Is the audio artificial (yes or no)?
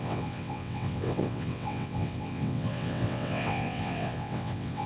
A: yes